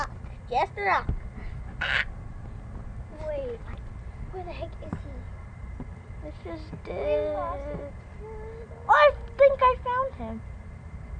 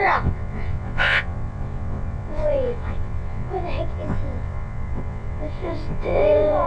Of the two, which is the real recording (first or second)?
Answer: first